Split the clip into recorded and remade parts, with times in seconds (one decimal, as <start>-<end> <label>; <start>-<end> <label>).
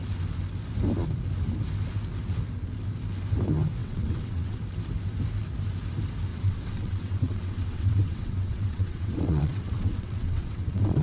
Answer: 0.0-3.8 recorded; 3.8-4.6 remade; 4.6-6.3 recorded; 6.3-11.0 remade